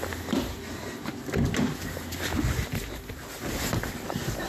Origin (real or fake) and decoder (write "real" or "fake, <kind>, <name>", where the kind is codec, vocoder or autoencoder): real